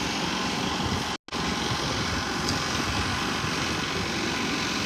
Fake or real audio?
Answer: real